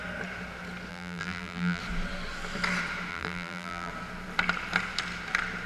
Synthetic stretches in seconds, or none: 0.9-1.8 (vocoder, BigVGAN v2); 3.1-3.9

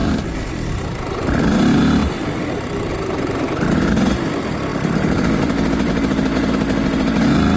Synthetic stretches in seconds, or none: 0.0-1.5 (vocoder, BigVGAN v2); 2.0-2.9; 4.7-5.9

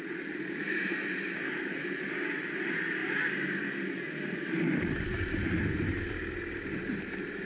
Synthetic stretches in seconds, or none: 0.0-7.5 (vocoder, BigVGAN v2)

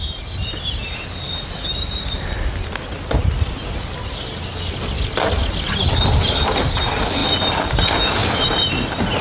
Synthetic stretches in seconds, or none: 8.2-9.2 (vocoder, BigVGAN v2)

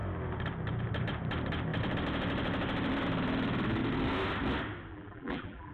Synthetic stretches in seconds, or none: 4.9-5.7 (vocoder, BigVGAN v2)